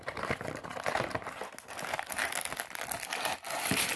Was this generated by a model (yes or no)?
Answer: no